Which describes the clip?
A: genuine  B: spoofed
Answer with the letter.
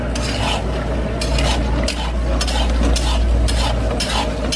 A